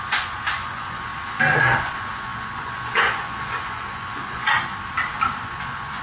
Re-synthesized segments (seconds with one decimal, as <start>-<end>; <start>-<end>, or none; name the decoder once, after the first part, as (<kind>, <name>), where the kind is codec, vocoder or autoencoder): 0.0-1.1 (vocoder, Vocos); 1.8-4.7; 5.4-6.0